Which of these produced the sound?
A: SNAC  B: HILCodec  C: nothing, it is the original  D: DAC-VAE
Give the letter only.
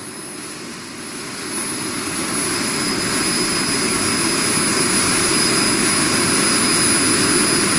C